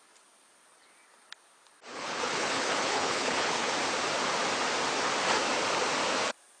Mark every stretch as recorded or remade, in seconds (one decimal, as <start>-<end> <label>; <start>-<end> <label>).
0.0-1.9 recorded; 1.9-3.7 remade; 3.7-6.6 recorded